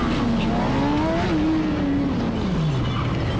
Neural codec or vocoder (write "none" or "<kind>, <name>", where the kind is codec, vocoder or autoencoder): none